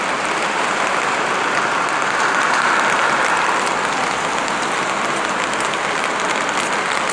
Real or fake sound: real